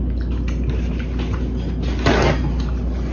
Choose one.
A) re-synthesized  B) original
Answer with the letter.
B